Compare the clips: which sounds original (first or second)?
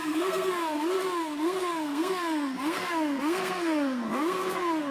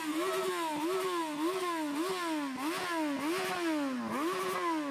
second